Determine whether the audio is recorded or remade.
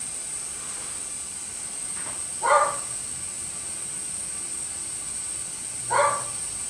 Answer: recorded